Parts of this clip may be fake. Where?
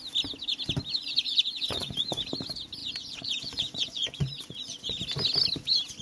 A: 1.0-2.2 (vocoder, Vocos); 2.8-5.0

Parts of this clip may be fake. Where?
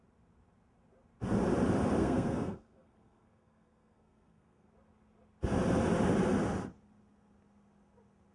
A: 2.0-4.7 (codec, SNAC)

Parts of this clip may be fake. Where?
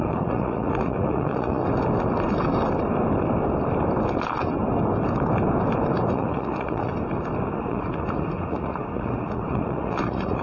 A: 0.0-1.6 (vocoder, Vocos); 6.1-6.9; 7.6-10.4